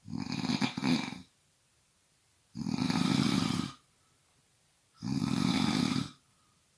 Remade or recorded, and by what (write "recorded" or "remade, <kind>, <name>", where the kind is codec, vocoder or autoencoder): remade, vocoder, BigVGAN v2